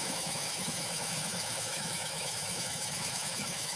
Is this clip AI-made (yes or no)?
yes